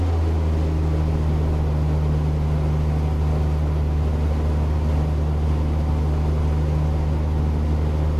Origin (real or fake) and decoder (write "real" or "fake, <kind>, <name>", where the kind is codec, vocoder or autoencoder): real